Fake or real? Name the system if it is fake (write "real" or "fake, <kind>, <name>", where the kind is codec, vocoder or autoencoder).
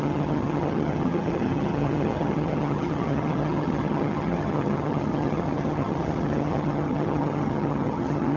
fake, vocoder, HiFi-GAN